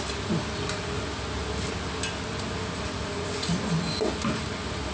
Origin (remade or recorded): recorded